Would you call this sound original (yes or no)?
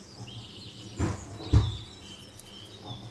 yes